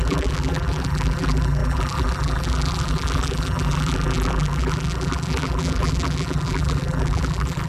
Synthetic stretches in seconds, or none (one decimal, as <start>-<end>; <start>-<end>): 0.0-7.7

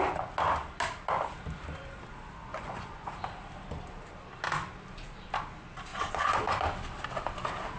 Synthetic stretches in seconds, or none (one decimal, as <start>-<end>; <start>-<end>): 2.5-3.1; 5.9-6.4

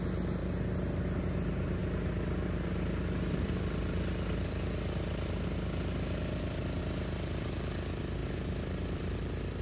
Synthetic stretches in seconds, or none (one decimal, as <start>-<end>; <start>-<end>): 0.0-0.4; 1.2-9.6

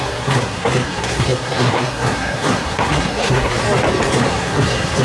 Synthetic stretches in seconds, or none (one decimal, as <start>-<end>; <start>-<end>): 0.0-3.6; 4.3-5.0

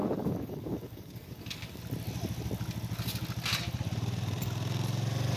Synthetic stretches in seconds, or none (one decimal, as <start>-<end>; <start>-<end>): 0.0-1.8

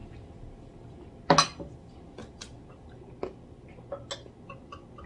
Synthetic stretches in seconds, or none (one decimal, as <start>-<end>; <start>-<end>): none

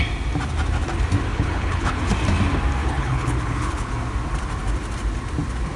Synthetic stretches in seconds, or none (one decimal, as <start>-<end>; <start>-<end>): 1.3-2.0; 2.8-3.9

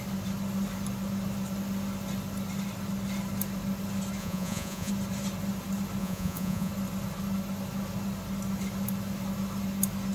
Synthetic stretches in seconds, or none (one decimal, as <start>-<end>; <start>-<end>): 4.2-4.9; 6.0-6.7